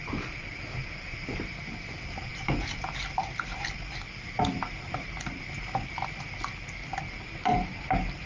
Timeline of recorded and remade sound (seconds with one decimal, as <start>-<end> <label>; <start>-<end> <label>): 0.0-8.3 recorded